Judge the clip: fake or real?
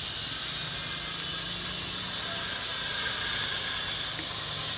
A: real